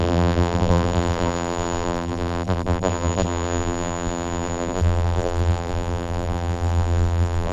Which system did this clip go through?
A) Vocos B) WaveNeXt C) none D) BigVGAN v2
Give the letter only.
D